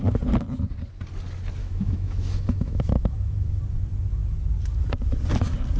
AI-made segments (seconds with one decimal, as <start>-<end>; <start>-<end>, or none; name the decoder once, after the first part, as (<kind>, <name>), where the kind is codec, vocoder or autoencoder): 1.6-3.6 (autoencoder, DAC-VAE)